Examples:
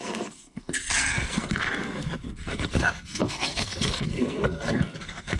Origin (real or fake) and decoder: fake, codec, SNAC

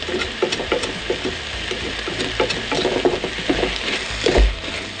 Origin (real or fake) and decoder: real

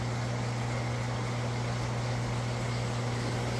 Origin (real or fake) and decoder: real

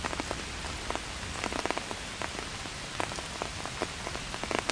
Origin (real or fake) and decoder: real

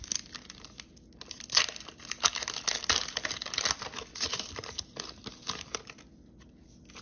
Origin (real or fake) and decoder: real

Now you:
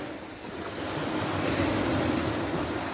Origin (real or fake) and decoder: real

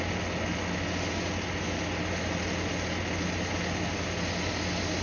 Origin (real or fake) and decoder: real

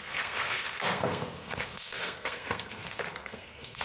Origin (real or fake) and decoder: fake, codec, SNAC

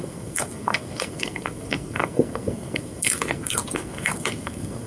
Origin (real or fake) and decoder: fake, codec, SNAC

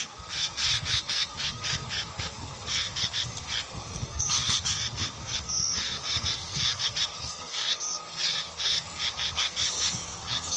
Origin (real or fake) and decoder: fake, codec, SNAC